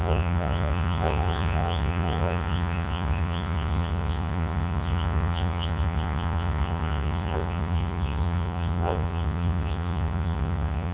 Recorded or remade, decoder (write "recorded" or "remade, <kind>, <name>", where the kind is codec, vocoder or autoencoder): remade, vocoder, Vocos